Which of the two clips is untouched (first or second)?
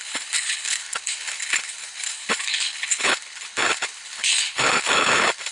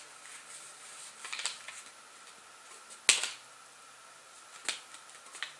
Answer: second